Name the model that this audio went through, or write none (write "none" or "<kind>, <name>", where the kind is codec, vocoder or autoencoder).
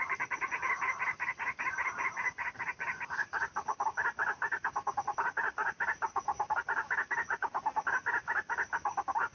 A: none